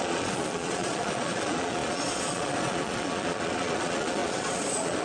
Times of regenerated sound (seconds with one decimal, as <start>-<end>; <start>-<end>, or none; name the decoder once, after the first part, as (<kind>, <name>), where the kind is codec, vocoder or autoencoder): 0.0-5.0 (vocoder, Vocos)